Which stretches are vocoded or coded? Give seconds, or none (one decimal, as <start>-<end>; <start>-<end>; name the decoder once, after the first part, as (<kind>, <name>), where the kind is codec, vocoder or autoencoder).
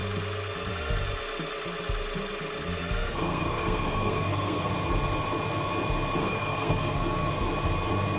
3.0-4.7 (codec, SNAC); 6.2-7.3